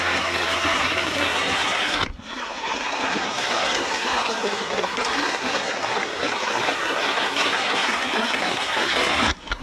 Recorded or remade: remade